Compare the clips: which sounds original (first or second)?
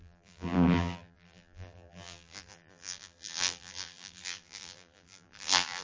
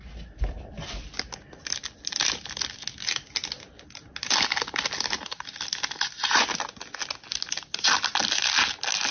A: second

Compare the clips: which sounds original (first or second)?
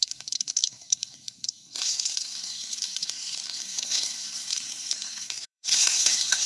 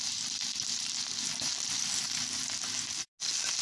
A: second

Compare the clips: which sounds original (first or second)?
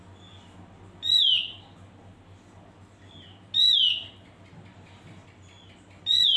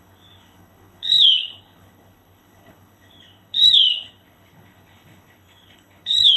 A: first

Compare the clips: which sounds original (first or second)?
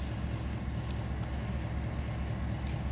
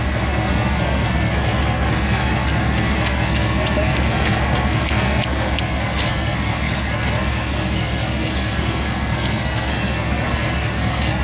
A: first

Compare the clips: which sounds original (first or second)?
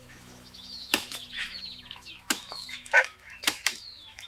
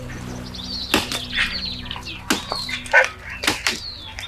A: second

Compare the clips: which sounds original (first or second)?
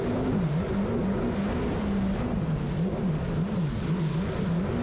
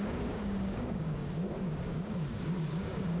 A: first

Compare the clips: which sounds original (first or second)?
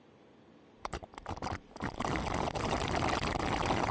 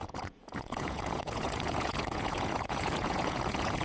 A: first